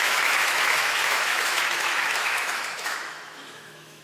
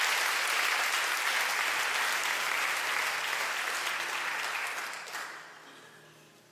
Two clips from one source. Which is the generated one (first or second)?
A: first